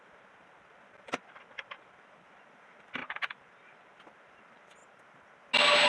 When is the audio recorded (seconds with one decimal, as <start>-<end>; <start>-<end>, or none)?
4.8-5.9